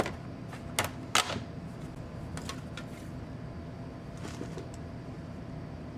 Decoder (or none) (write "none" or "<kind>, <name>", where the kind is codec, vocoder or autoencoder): none